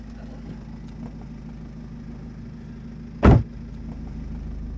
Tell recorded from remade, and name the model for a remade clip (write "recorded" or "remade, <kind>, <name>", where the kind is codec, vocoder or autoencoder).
recorded